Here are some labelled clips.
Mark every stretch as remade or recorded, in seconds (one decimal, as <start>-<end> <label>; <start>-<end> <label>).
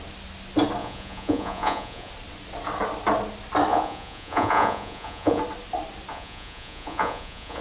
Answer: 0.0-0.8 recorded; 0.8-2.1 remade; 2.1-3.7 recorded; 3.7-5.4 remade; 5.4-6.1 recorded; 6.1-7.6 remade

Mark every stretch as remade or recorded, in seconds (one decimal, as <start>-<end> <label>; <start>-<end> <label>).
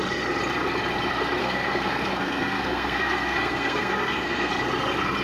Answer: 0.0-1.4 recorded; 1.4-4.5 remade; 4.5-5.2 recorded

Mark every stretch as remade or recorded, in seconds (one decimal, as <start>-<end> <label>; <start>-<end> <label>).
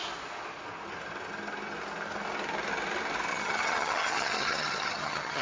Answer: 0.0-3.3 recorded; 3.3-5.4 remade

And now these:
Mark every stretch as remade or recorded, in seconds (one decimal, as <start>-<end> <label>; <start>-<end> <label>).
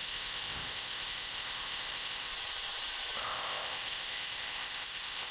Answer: 0.0-2.3 remade; 2.3-3.2 recorded; 3.2-5.3 remade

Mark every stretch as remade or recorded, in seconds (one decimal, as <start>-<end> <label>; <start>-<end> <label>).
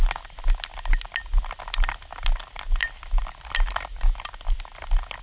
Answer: 0.0-5.2 recorded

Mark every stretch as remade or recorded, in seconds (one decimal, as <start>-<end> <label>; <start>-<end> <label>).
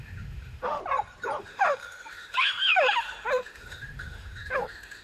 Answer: 0.0-0.8 remade; 0.8-1.4 recorded; 1.4-5.0 remade